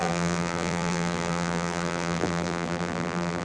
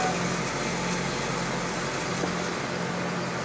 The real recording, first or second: second